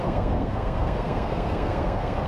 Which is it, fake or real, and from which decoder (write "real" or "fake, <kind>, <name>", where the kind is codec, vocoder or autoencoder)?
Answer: fake, codec, SNAC